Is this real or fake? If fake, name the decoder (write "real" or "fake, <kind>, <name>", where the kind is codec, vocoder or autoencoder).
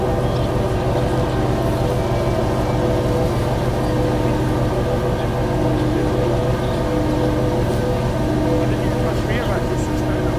real